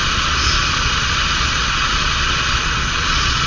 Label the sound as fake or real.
fake